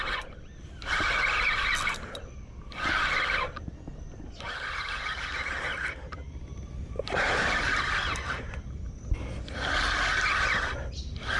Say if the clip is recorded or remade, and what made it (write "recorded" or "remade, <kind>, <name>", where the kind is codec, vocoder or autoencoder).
recorded